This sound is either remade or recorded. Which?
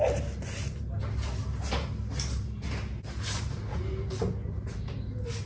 recorded